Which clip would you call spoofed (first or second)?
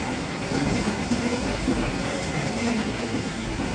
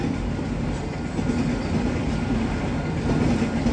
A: first